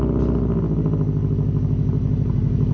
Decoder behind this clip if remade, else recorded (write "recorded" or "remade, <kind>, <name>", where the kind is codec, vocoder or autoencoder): recorded